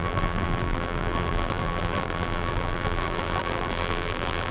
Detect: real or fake fake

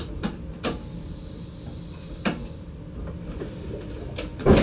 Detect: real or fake real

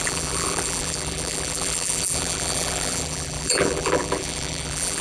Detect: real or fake fake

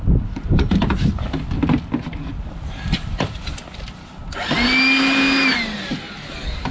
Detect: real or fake real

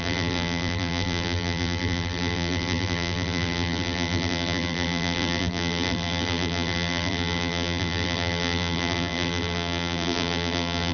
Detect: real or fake fake